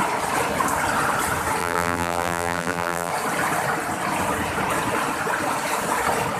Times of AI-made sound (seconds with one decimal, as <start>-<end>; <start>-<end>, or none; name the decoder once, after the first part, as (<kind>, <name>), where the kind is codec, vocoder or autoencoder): 1.6-3.1 (vocoder, BigVGAN v2)